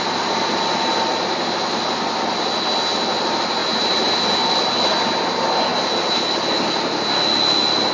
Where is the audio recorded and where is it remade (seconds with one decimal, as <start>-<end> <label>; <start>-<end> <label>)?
0.0-7.9 recorded